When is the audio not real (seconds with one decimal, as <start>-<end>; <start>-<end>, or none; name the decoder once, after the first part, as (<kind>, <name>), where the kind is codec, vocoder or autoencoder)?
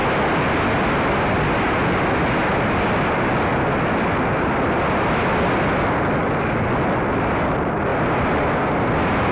none